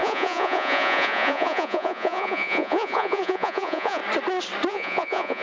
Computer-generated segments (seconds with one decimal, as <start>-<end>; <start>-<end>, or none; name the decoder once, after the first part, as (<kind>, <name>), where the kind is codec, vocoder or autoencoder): 0.0-4.0 (vocoder, Vocos); 4.7-5.4